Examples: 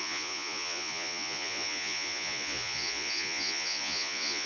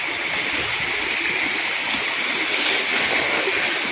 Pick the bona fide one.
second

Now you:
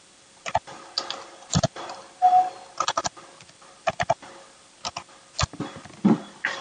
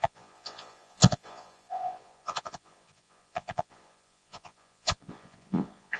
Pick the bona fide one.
first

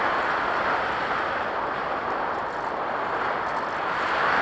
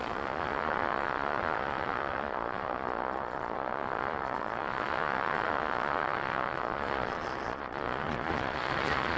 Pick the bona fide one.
first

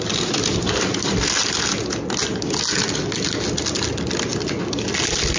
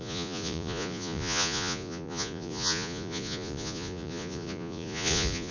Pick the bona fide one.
first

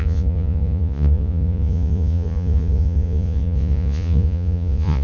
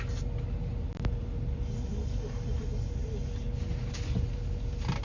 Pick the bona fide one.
second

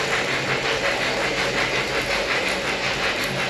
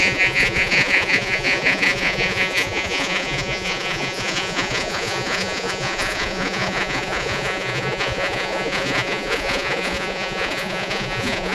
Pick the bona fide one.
first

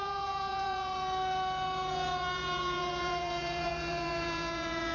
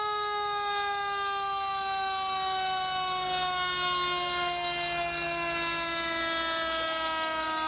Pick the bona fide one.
second